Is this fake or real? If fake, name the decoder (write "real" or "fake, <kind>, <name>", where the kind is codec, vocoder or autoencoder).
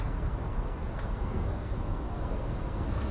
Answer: fake, codec, SNAC